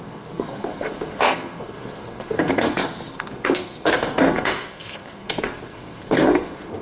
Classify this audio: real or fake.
fake